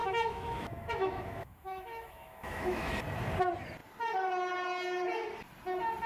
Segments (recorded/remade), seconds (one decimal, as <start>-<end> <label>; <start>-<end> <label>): 0.0-2.9 remade; 2.9-6.1 recorded